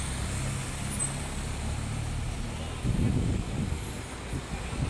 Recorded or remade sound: recorded